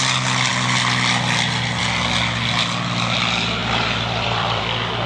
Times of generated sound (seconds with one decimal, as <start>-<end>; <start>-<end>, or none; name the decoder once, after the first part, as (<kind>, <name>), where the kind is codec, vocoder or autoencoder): 0.5-1.8 (vocoder, BigVGAN v2); 3.6-4.6